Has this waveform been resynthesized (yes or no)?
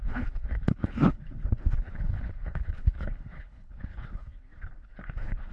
yes